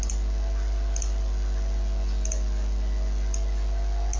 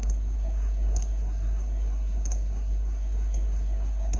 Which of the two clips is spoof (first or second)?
second